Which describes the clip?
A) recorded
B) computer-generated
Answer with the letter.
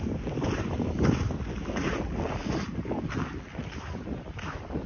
A